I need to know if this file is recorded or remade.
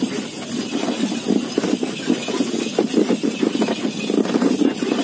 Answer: recorded